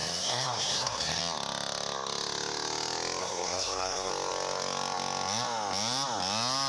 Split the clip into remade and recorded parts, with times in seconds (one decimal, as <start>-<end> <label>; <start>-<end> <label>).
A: 0.0-1.2 remade; 1.2-3.2 recorded; 3.2-4.1 remade; 4.1-6.7 recorded